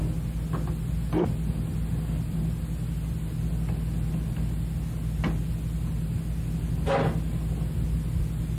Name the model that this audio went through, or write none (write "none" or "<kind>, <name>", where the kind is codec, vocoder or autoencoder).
none